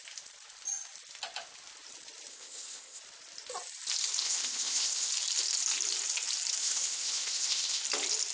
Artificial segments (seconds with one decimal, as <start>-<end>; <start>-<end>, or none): 2.3-3.0; 4.2-5.1; 6.6-7.8